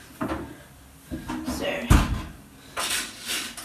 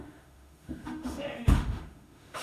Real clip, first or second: first